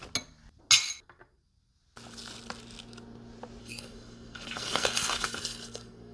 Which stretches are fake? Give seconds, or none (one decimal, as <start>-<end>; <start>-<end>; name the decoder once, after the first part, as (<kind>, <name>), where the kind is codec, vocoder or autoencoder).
3.6-6.1 (codec, SNAC)